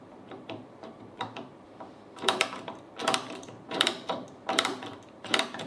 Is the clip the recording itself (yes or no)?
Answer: no